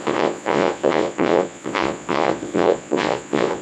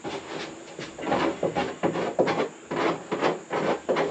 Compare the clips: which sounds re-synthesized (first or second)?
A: first